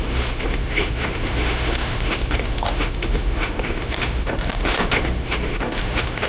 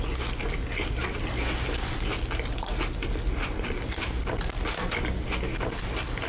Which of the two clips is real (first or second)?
second